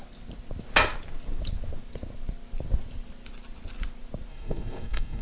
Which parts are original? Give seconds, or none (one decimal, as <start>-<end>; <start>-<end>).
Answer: 0.0-4.3